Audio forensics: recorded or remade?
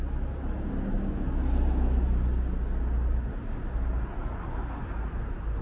recorded